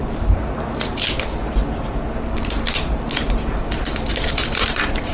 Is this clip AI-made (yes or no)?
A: no